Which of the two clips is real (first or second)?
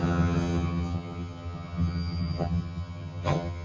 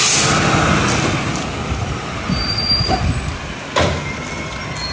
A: second